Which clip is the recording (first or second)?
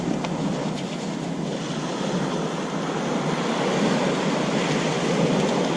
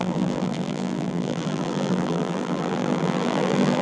first